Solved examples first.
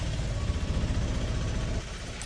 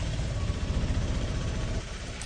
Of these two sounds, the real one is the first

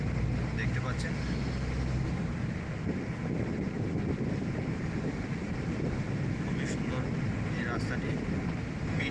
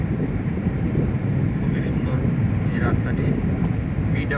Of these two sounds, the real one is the first